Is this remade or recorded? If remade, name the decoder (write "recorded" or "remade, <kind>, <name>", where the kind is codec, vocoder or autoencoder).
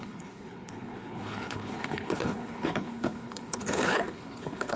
remade, codec, HILCodec